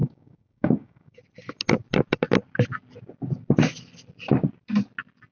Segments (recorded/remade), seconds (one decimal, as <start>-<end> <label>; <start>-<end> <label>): 0.0-1.2 remade; 1.2-5.3 recorded